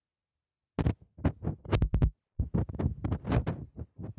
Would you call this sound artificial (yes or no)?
no